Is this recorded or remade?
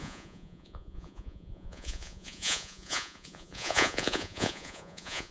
remade